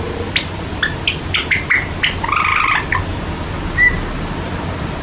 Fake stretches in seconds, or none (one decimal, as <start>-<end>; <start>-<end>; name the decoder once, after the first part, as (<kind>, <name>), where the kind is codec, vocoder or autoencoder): 2.5-3.2 (vocoder, BigVGAN v2)